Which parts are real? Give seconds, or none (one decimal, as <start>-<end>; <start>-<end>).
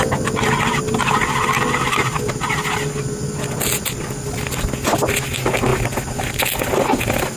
0.0-7.4